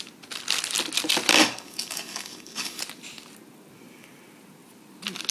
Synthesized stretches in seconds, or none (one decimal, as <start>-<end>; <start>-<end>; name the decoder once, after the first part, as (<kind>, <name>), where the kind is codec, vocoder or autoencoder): 1.3-2.8 (codec, DAC)